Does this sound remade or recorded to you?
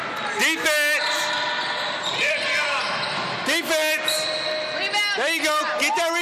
recorded